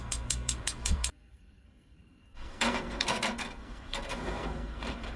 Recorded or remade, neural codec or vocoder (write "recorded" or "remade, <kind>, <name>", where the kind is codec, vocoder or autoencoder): remade, codec, SNAC